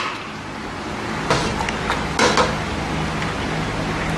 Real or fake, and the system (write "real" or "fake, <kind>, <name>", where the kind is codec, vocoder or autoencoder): real